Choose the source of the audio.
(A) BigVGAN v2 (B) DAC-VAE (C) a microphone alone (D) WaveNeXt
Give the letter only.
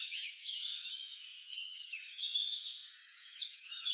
B